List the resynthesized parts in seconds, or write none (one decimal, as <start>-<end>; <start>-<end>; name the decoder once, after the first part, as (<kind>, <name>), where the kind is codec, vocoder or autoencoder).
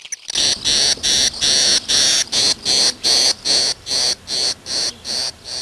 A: none